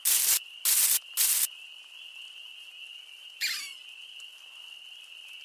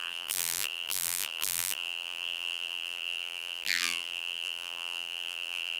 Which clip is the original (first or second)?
first